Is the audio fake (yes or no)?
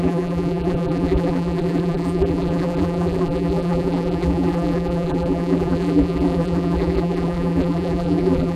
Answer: yes